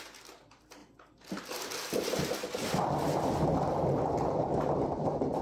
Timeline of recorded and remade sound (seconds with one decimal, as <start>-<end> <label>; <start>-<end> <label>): 0.0-5.4 recorded